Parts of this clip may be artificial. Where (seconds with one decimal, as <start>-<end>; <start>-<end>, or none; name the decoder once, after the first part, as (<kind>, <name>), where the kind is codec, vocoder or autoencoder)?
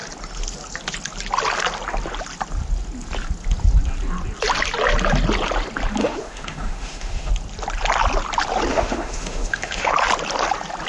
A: 6.0-7.3 (autoencoder, DAC-VAE); 8.7-9.9